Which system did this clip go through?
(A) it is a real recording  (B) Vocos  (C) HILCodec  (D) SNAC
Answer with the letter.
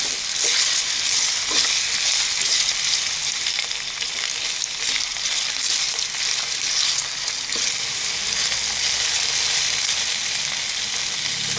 A